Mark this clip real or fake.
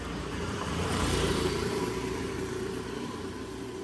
fake